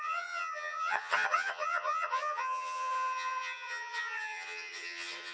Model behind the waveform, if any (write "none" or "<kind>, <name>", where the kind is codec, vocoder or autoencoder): vocoder, HiFi-GAN